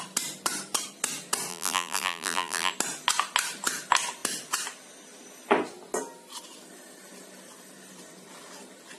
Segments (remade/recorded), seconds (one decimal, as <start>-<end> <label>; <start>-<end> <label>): 0.0-1.5 recorded; 1.5-2.7 remade; 2.7-9.0 recorded